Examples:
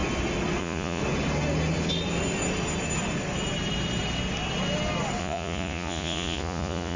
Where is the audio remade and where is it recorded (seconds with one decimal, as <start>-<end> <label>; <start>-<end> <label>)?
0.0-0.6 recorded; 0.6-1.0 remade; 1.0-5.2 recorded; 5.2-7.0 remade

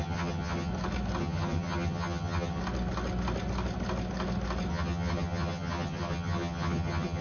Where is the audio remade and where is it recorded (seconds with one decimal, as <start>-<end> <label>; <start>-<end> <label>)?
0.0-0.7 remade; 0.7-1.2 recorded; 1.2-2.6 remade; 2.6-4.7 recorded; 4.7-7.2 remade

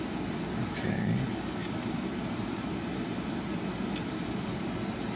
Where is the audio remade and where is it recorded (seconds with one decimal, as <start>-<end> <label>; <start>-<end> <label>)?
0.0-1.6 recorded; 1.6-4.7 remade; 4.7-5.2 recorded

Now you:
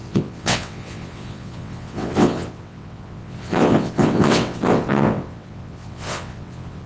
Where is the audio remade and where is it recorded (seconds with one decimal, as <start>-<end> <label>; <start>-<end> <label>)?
0.0-6.9 remade

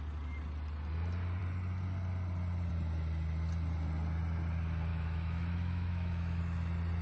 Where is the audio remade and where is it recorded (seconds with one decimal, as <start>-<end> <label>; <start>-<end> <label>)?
0.0-4.9 recorded; 4.9-6.4 remade; 6.4-7.0 recorded